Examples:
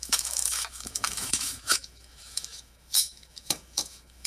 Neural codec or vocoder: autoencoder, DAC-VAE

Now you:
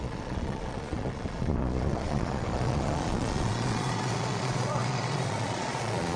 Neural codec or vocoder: vocoder, Vocos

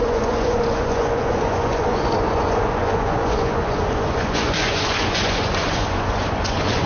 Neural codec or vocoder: vocoder, Vocos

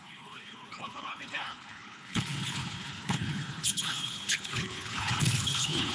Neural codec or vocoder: codec, HILCodec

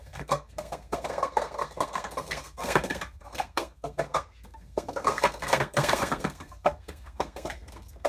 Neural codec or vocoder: codec, SNAC